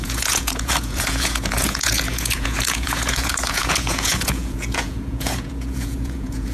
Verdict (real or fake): fake